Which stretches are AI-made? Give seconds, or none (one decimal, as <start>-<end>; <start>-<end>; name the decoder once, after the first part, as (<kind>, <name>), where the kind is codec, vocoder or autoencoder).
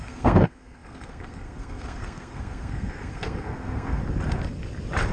0.0-4.0 (codec, SNAC)